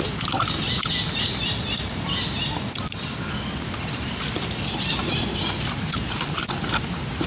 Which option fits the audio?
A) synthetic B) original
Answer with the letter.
B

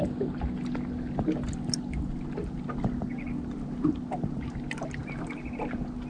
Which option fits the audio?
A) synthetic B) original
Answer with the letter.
B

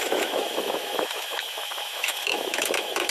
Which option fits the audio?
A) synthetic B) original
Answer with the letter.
A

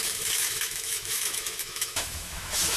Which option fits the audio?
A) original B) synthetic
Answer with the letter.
B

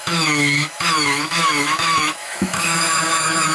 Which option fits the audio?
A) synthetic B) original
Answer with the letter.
A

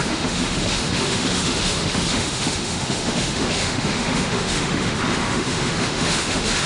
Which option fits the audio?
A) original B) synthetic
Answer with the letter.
B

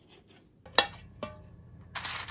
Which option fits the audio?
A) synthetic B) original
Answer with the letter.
B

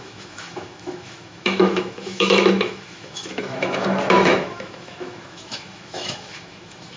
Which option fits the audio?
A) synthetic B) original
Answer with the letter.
A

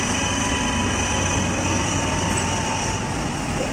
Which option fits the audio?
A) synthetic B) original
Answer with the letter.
B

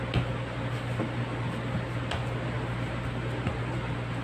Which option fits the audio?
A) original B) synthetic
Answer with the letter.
A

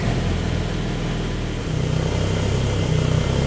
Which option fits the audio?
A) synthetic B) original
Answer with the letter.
B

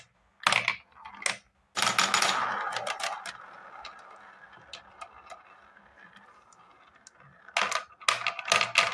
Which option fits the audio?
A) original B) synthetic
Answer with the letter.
A